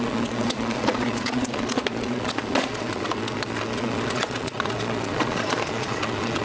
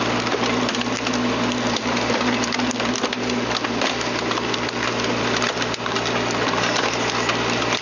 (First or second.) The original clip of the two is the second